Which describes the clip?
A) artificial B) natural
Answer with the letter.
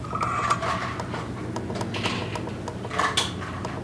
B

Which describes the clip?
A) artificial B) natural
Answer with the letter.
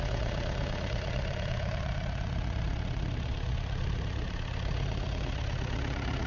A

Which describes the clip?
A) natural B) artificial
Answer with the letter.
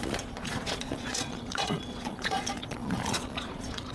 B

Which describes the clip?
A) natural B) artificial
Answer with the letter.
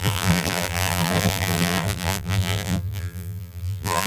B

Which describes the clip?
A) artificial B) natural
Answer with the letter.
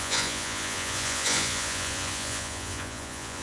A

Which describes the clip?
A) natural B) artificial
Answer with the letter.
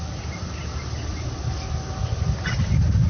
A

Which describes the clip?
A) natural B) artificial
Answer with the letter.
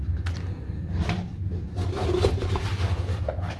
A